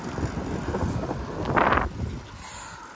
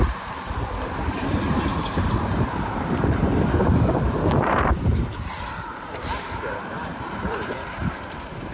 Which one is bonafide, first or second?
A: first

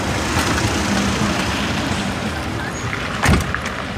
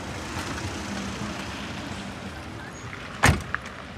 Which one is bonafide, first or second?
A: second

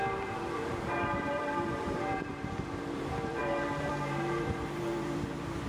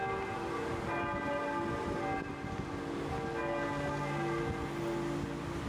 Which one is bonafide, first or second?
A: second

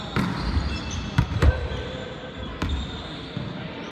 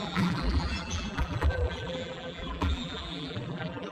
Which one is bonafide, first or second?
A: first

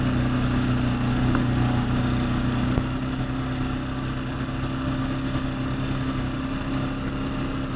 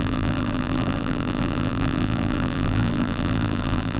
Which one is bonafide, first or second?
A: first